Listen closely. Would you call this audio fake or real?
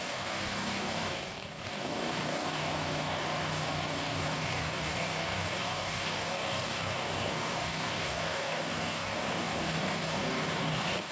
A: fake